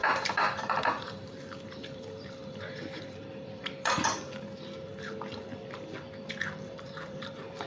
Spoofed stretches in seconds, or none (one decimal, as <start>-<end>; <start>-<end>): 0.0-4.9; 6.8-7.7